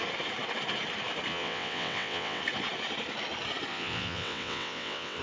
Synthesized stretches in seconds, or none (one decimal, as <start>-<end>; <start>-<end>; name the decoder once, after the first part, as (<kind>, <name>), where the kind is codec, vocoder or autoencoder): 1.3-2.4 (vocoder, WaveNeXt); 3.7-5.2